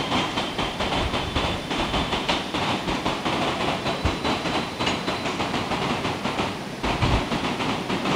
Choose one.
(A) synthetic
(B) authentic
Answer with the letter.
A